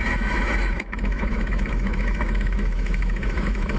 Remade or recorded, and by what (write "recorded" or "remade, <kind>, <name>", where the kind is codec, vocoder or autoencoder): remade, autoencoder, DAC-VAE